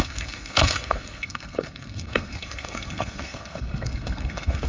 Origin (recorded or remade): remade